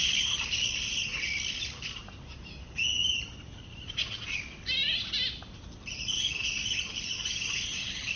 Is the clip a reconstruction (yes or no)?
no